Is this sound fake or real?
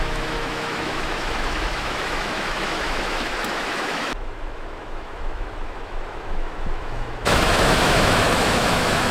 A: fake